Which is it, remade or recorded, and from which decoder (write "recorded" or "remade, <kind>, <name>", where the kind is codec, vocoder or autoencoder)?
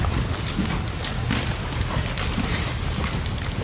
recorded